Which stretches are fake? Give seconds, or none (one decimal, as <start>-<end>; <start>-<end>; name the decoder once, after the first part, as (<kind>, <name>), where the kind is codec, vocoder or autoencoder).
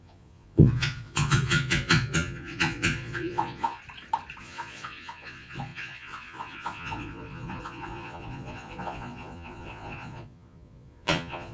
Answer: 0.0-3.8 (vocoder, Vocos); 4.4-11.5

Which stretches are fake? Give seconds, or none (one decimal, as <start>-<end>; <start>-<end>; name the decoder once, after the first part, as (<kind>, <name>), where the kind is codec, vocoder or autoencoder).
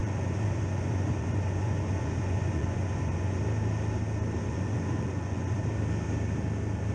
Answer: 0.0-3.4 (vocoder, Vocos); 4.4-5.6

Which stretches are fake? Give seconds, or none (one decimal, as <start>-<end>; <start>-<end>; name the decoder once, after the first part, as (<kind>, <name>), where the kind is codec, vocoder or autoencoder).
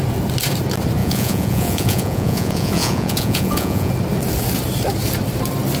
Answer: 1.0-3.9 (vocoder, Vocos)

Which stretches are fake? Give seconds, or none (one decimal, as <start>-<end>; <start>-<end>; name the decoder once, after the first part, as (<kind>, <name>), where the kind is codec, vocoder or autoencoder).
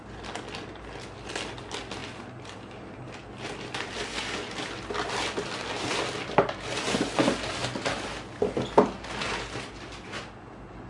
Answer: none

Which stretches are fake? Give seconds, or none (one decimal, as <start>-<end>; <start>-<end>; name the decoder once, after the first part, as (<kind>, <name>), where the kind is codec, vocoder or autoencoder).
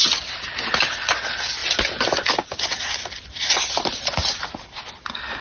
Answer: none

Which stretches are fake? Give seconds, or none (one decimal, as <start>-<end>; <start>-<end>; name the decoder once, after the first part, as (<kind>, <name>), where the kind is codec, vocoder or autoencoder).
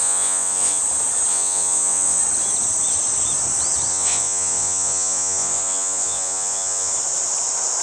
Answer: 0.0-0.8 (vocoder, Vocos); 1.3-2.2; 3.9-6.9